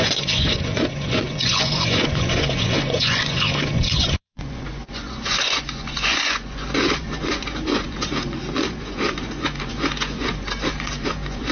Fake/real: fake